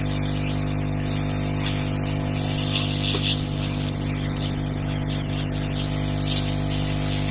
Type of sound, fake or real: real